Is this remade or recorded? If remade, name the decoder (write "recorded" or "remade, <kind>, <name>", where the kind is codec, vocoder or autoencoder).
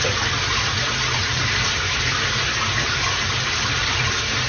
recorded